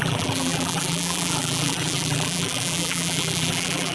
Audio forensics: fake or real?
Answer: fake